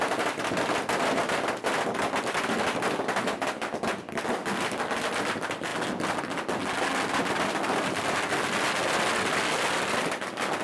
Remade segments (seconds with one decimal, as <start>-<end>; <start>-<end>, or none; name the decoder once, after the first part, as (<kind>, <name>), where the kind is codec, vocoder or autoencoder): none